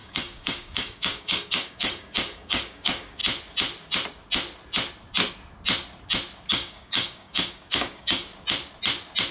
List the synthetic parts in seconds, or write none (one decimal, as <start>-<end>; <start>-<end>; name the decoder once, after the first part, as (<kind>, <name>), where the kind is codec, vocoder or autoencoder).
0.0-3.2 (codec, DAC); 6.5-8.3